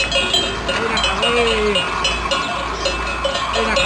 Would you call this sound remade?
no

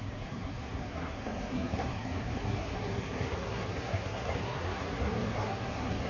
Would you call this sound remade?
yes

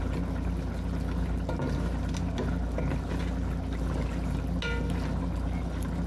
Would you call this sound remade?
no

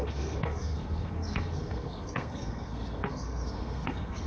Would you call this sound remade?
yes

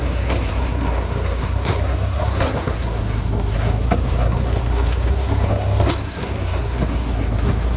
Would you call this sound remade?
yes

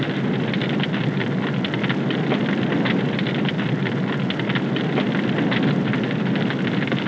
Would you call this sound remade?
no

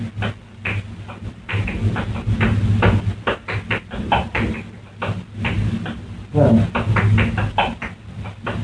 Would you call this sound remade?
no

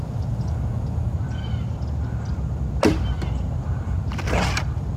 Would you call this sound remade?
no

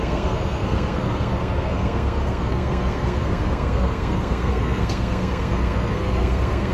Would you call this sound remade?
yes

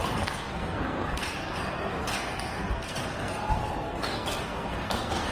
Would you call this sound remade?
yes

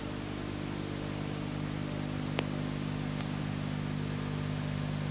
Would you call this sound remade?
no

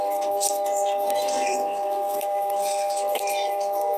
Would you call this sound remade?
yes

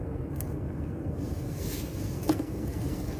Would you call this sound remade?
yes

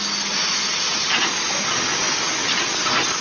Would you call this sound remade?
no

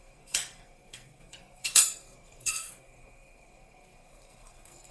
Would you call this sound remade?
yes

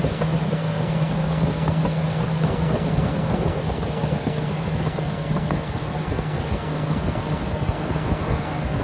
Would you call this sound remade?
yes